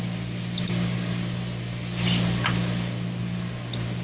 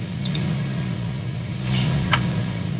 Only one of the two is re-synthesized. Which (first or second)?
second